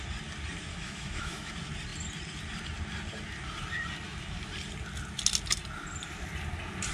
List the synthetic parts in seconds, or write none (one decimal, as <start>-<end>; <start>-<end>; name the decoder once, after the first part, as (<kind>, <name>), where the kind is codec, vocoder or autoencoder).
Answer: 0.7-1.5 (autoencoder, DAC-VAE)